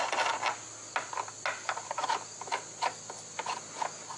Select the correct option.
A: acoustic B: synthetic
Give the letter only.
A